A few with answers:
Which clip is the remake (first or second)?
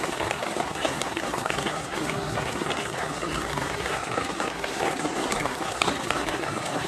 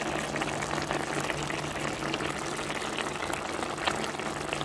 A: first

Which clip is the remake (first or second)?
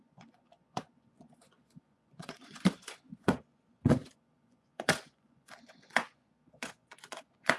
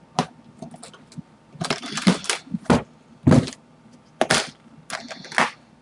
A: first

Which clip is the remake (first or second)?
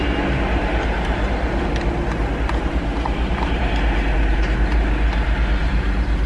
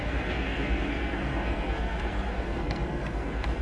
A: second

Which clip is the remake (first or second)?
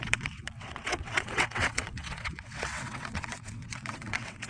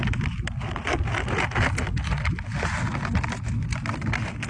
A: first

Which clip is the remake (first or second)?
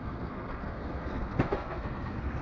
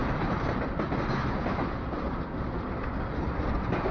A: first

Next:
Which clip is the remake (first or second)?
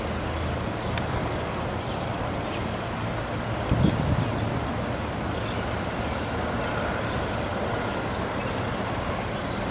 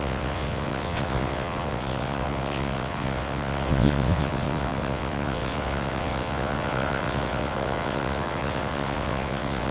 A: second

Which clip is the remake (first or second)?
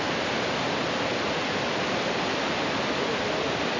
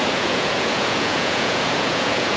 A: second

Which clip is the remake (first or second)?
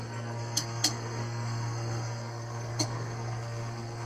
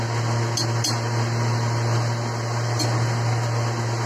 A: first